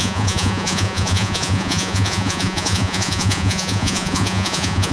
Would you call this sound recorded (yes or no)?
no